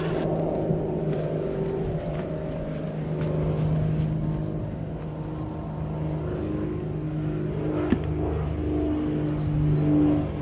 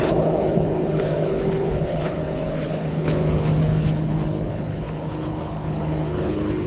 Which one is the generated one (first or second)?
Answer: second